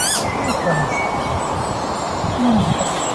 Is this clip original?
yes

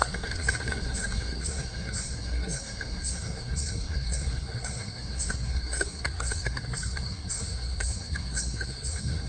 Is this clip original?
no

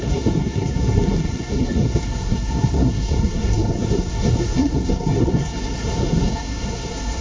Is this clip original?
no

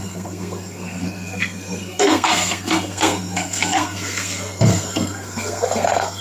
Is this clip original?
no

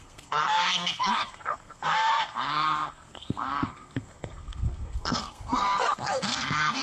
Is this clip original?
no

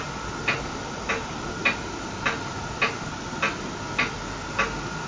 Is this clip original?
yes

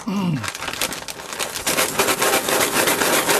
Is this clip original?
yes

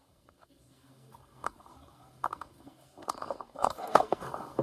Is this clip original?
no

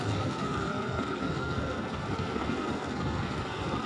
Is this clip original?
no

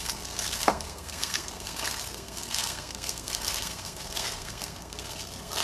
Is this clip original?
no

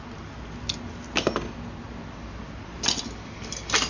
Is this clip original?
yes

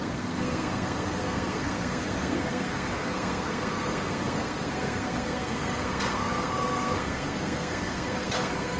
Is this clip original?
no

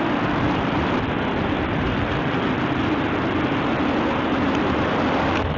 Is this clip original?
yes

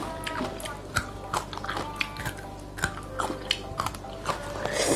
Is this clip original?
yes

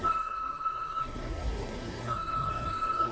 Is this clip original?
no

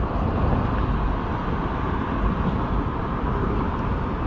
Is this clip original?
yes